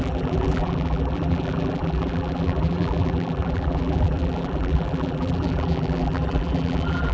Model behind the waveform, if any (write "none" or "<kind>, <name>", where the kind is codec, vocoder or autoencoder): vocoder, BigVGAN v2